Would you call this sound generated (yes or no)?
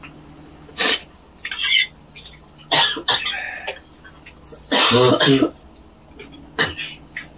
no